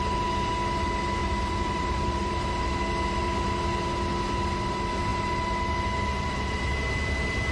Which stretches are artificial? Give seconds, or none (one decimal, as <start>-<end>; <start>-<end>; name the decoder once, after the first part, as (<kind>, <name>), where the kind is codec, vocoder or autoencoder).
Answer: 1.2-2.7 (vocoder, BigVGAN v2)

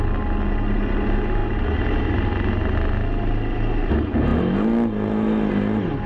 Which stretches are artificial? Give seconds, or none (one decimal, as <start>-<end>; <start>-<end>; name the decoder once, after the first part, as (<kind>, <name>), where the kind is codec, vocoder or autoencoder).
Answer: none

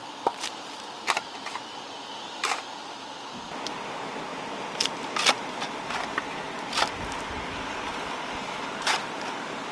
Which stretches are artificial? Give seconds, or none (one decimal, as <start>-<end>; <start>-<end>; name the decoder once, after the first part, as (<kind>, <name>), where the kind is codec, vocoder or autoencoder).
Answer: 0.0-2.9 (vocoder, BigVGAN v2)

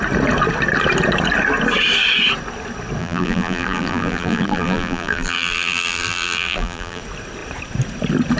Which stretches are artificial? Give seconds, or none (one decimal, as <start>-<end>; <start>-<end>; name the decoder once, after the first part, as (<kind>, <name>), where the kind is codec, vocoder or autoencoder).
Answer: 3.0-7.0 (vocoder, BigVGAN v2)

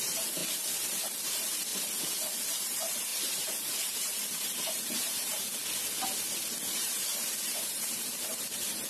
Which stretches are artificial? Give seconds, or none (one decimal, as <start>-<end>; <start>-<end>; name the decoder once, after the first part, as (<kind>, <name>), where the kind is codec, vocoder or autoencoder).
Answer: 0.0-0.4 (vocoder, BigVGAN v2); 1.2-1.7; 2.6-5.6; 6.8-8.9